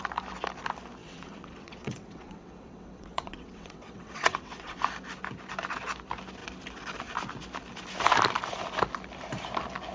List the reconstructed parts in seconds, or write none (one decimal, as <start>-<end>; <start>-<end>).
1.0-4.8